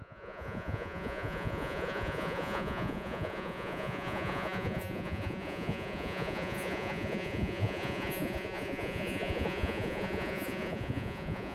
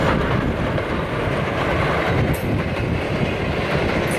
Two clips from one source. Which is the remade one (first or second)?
first